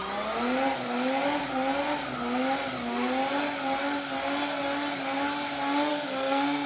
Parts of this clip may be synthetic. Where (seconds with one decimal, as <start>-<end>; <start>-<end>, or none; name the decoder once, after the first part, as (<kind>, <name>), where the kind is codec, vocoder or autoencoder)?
5.9-6.7 (codec, SNAC)